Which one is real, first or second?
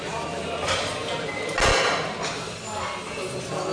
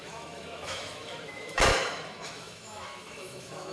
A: first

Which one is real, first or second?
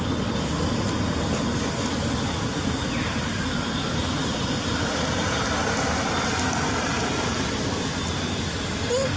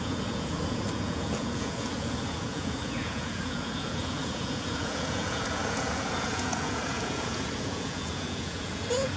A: first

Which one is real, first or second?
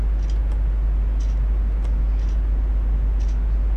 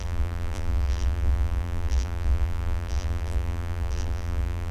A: first